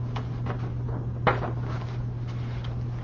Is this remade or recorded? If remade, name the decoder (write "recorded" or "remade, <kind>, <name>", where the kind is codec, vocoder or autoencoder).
recorded